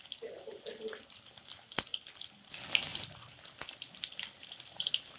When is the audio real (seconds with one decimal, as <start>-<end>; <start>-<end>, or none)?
0.0-5.2